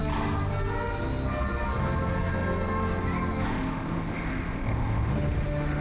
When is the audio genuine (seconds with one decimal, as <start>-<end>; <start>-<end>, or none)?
0.0-3.5